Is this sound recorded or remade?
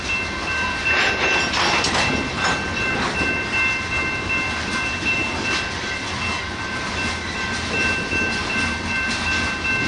recorded